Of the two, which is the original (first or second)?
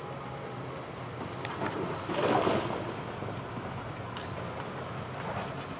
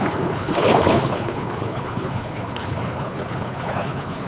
first